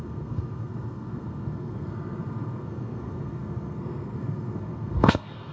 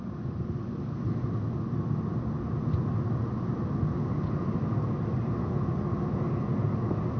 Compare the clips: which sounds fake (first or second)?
first